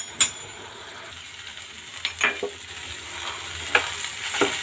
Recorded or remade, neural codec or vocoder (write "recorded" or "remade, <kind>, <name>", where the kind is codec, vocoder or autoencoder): recorded